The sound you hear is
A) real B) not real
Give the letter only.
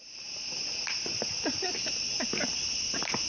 A